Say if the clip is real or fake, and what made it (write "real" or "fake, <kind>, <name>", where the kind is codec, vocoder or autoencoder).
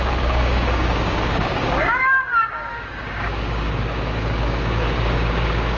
fake, codec, DAC